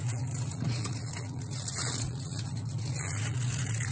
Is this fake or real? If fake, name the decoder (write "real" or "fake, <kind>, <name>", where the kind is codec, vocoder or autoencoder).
fake, vocoder, Vocos